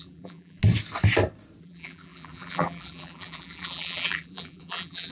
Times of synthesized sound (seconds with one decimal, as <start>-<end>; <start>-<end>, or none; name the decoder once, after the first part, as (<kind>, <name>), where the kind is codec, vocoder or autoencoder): 0.0-0.6 (vocoder, BigVGAN v2); 1.6-5.1